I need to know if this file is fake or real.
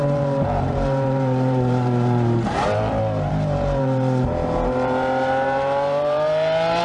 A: fake